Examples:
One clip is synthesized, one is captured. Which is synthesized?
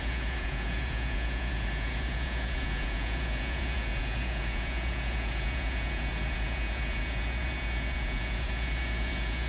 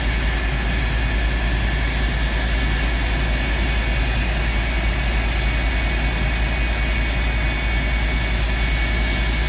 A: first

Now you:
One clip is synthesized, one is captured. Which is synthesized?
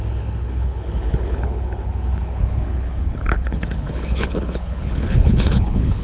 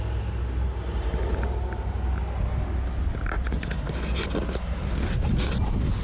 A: first